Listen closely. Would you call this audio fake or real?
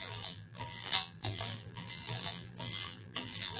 fake